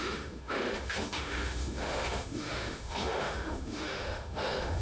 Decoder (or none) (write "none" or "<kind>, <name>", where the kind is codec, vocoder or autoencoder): autoencoder, DAC-VAE